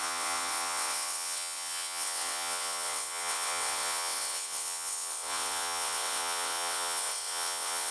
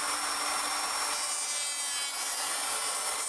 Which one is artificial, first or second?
first